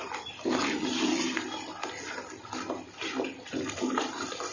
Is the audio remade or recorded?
recorded